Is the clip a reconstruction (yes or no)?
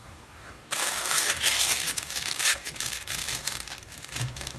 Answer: yes